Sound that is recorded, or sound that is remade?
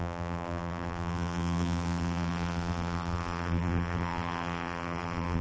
remade